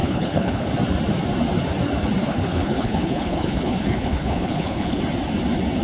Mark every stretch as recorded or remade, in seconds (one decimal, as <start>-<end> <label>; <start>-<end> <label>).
0.0-0.7 remade; 0.7-2.2 recorded; 2.2-5.0 remade; 5.0-5.8 recorded